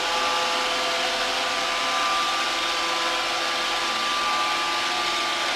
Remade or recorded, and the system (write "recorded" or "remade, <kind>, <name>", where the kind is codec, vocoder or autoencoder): recorded